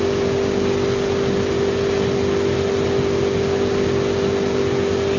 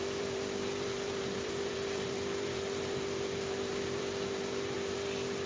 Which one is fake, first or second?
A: second